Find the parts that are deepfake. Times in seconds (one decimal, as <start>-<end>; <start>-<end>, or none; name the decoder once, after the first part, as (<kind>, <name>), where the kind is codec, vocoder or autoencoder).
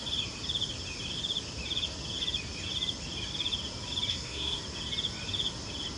4.1-4.6 (codec, SNAC)